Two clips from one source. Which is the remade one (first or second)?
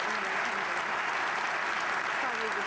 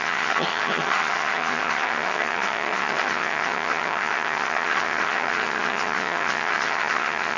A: second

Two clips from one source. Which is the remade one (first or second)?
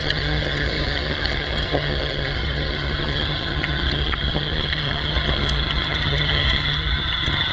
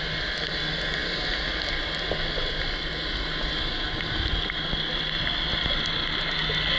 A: first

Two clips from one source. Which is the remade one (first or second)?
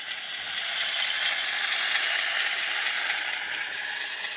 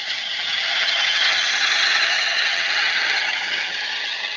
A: second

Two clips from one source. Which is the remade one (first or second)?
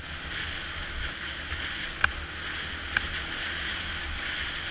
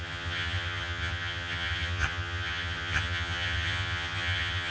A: second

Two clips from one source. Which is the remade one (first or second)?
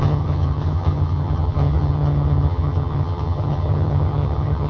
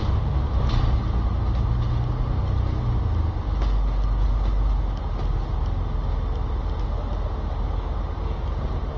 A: first